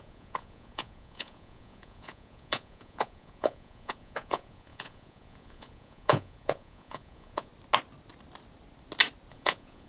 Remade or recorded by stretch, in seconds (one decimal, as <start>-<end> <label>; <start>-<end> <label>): 0.0-7.5 remade; 7.5-9.3 recorded; 9.3-9.9 remade